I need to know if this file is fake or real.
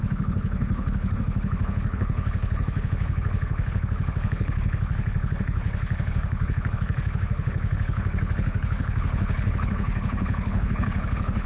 fake